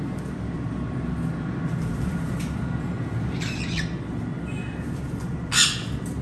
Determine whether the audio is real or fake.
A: real